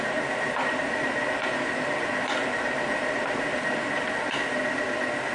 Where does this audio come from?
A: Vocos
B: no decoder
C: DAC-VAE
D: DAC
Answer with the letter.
B